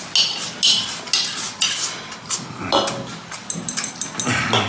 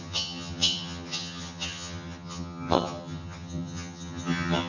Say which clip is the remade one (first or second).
second